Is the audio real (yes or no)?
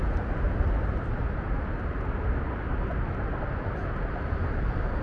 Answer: yes